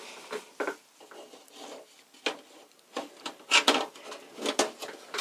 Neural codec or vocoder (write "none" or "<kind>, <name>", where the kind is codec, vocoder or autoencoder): none